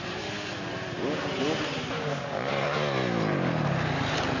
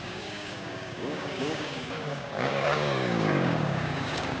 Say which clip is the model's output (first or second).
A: second